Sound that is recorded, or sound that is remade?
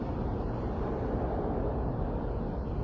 recorded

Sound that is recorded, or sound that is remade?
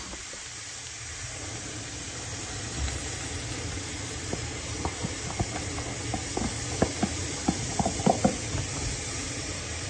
recorded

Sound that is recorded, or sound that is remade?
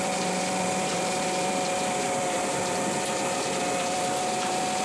remade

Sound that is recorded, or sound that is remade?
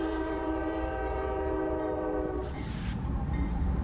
remade